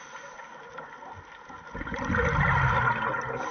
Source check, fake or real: real